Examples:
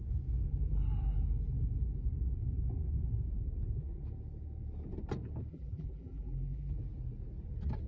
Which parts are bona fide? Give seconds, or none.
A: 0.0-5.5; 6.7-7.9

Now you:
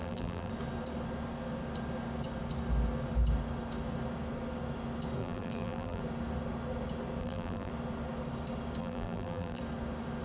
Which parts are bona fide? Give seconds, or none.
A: 0.5-5.2; 6.0-7.2; 7.7-8.8; 9.6-10.2

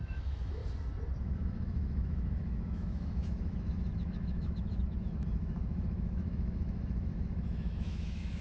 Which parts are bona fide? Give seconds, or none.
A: 0.6-1.2

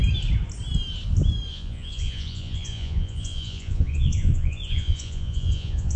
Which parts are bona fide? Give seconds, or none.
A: 0.0-1.5

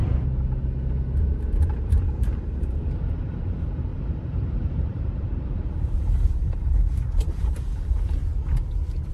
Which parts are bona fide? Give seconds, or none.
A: 0.0-1.6; 8.2-9.1

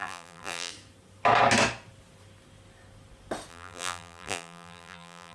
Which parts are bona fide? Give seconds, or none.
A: 0.7-3.5

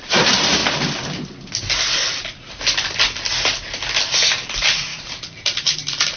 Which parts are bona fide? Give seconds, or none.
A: 0.6-4.3